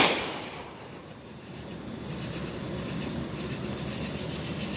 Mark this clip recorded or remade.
remade